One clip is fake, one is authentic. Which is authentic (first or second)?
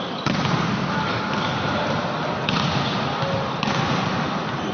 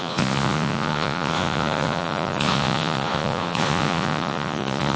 first